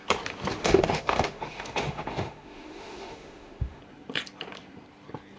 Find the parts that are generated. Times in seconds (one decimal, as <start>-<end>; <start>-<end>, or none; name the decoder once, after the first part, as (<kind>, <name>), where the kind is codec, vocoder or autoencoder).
0.6-3.8 (autoencoder, DAC-VAE)